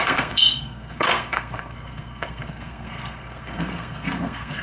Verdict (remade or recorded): remade